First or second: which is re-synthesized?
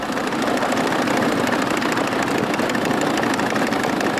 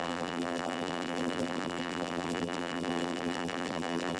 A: second